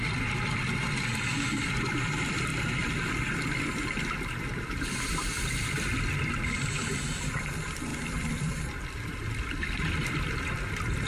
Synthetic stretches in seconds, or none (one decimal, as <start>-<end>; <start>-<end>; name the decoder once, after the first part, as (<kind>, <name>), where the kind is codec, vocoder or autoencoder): 0.0-2.5 (vocoder, BigVGAN v2); 4.8-11.1